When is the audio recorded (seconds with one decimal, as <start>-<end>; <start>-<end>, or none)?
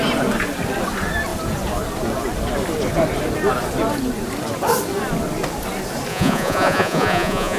0.0-6.1